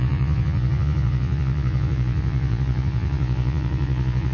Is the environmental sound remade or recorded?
remade